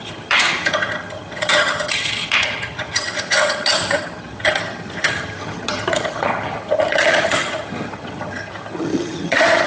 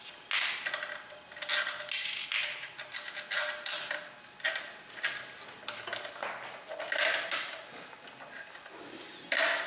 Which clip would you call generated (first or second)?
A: first